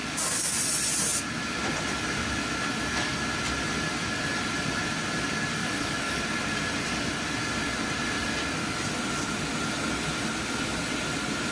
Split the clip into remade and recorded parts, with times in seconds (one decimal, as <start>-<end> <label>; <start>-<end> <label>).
0.0-0.6 remade; 0.6-5.6 recorded; 5.6-6.2 remade; 6.2-11.5 recorded